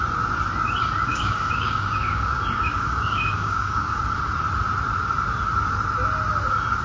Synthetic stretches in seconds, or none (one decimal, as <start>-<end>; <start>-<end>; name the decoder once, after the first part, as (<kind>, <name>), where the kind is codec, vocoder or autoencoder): 1.1-4.0 (codec, DAC)